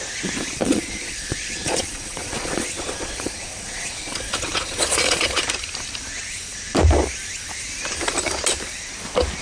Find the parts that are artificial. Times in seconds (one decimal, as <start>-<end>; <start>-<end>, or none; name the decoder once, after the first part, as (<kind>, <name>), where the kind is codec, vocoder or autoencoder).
0.6-5.4 (vocoder, Vocos)